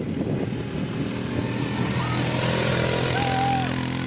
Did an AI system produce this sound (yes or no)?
no